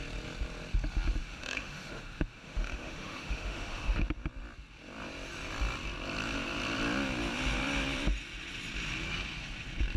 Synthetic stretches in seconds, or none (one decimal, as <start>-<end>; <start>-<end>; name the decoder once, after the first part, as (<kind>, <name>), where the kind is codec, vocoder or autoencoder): 1.2-4.0 (autoencoder, DAC-VAE)